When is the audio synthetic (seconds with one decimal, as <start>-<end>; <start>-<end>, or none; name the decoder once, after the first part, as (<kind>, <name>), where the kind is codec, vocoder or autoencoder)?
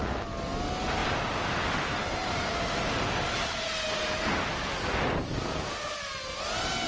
none